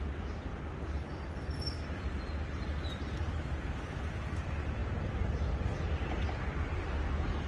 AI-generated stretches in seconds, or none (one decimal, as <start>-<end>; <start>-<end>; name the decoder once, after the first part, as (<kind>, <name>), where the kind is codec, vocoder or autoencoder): none